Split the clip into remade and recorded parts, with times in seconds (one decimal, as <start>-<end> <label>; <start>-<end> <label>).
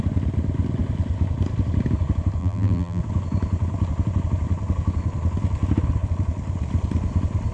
0.0-2.4 recorded; 2.4-3.0 remade; 3.0-7.5 recorded